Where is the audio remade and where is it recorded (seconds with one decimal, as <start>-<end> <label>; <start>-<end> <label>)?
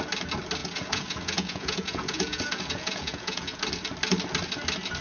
0.0-0.6 recorded; 0.6-3.6 remade; 3.6-5.0 recorded